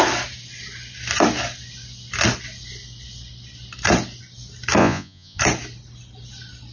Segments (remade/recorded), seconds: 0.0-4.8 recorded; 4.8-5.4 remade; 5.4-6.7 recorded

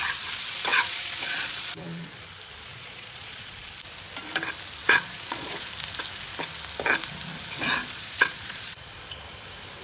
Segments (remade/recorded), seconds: 0.0-0.7 recorded; 0.7-2.2 remade; 2.2-2.7 recorded; 2.7-3.7 remade; 3.7-4.8 recorded; 4.8-5.7 remade; 5.7-7.8 recorded; 7.8-9.0 remade; 9.0-9.8 recorded